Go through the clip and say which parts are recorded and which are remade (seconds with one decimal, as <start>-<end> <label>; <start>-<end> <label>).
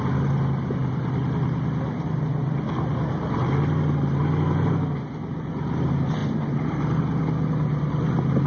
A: 0.0-8.5 recorded